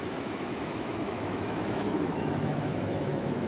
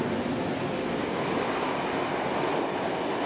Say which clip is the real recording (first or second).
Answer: second